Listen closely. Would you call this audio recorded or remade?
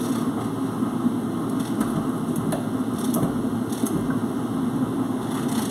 recorded